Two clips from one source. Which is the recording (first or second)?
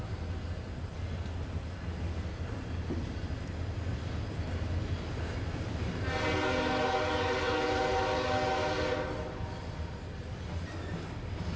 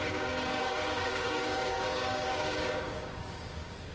first